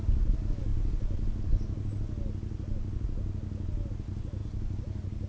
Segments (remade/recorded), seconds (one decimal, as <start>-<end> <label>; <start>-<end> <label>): 0.0-5.3 recorded